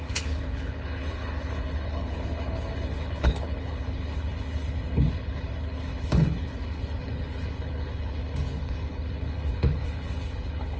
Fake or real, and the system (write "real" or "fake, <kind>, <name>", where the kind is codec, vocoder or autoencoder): fake, codec, HILCodec